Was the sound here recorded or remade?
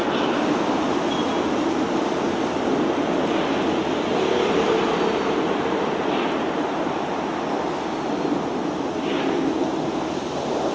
recorded